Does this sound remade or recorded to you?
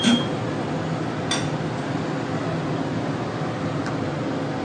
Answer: recorded